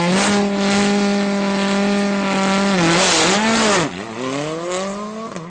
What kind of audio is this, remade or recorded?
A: recorded